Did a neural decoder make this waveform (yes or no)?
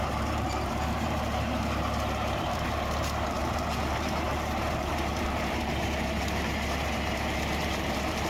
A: yes